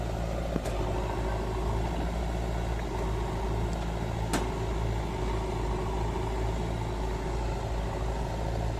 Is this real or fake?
real